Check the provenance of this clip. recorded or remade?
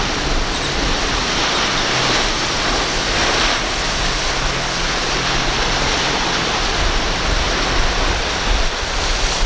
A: recorded